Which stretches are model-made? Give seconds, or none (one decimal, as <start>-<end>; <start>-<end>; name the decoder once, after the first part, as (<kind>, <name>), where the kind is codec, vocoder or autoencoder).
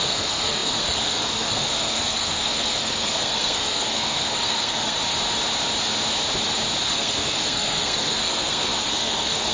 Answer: 0.0-5.0 (codec, SNAC); 6.8-9.5